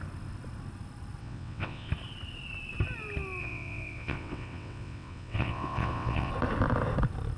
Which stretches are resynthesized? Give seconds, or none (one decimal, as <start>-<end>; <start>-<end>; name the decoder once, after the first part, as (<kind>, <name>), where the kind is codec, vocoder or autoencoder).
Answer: 1.2-1.9 (vocoder, WaveNeXt); 3.4-6.3